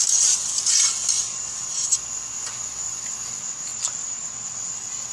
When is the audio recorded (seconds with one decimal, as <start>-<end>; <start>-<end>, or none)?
0.0-5.1